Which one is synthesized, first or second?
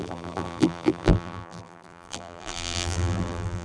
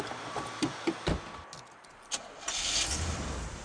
first